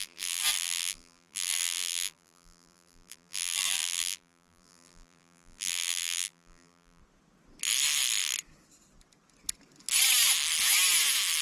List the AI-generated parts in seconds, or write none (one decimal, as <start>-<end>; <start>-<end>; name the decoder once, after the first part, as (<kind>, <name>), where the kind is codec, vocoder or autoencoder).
0.0-7.0 (vocoder, BigVGAN v2)